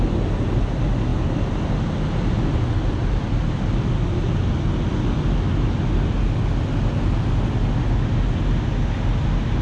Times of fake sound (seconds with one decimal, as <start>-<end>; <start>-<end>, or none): none